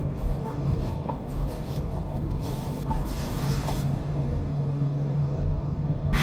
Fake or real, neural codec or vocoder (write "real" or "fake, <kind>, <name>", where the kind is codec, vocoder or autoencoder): fake, codec, DAC